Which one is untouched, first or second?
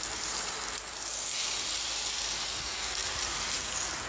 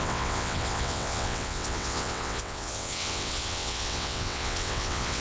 first